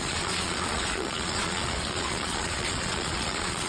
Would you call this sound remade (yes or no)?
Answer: yes